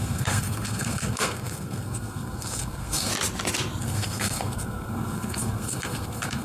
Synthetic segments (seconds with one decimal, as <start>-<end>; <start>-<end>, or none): 0.0-3.1; 3.8-6.4